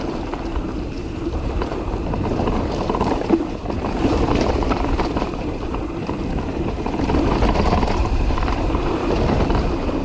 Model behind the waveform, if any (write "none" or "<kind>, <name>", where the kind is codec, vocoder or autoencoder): vocoder, BigVGAN v2